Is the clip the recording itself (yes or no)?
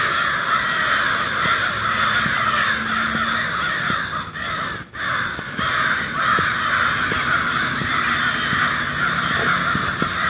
yes